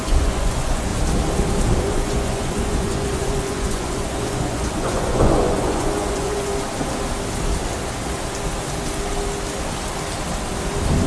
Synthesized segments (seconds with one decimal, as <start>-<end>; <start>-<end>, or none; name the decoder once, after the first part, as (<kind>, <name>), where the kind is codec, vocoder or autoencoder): 0.0-0.9 (vocoder, Vocos); 1.8-6.5